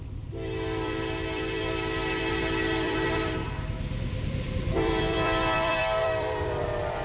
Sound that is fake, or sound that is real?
fake